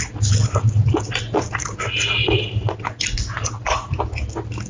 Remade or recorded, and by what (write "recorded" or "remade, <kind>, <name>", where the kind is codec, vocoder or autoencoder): recorded